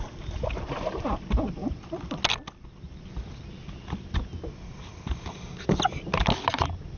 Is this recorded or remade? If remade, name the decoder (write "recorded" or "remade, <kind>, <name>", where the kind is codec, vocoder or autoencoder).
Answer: recorded